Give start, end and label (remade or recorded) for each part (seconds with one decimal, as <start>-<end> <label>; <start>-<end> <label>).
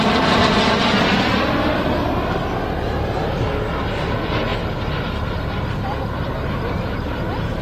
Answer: 0.0-7.6 recorded